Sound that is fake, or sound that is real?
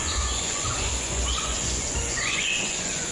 fake